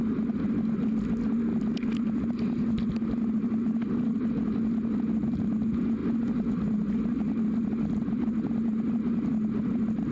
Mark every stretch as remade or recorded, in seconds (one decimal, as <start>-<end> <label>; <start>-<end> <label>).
0.0-10.1 recorded